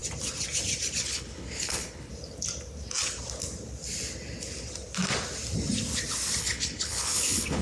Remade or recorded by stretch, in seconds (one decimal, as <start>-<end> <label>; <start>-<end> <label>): 0.0-1.0 recorded; 1.0-2.1 remade; 2.1-6.4 recorded; 6.4-7.6 remade